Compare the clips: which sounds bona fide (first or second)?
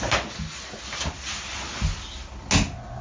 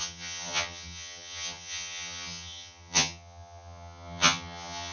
first